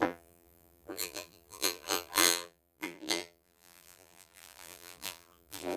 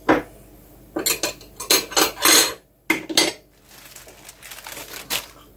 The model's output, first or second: first